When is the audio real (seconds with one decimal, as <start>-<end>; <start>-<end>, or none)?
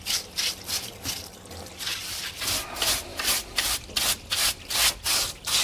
0.0-2.0; 2.7-3.1; 4.0-5.6